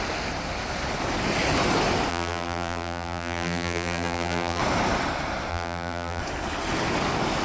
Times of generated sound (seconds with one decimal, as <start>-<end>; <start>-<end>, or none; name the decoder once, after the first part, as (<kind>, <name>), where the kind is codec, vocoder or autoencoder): 2.1-4.6 (vocoder, BigVGAN v2); 5.5-6.2